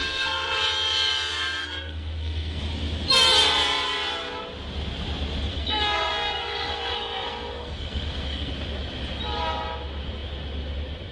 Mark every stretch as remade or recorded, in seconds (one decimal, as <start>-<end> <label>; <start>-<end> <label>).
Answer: 0.0-0.6 remade; 0.6-1.6 recorded; 1.6-2.6 remade; 2.6-5.5 recorded; 5.5-8.5 remade; 8.5-11.1 recorded

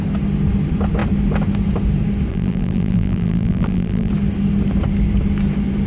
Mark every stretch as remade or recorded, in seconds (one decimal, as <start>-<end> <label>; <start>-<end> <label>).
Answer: 0.0-2.3 recorded; 2.3-4.1 remade; 4.1-5.9 recorded

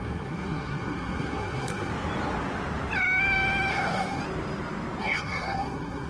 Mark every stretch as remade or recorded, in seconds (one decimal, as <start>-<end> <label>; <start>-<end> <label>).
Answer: 0.0-1.9 remade; 1.9-3.7 recorded; 3.7-4.2 remade; 4.2-5.0 recorded; 5.0-6.1 remade